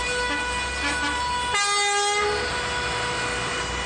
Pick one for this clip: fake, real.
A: real